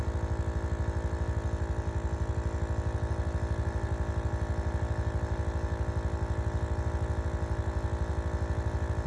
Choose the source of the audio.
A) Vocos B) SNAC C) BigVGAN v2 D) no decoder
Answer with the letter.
D